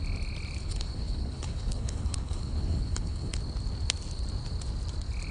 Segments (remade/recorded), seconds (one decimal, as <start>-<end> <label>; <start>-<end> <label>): 0.0-0.6 recorded; 0.6-3.4 remade; 3.4-5.3 recorded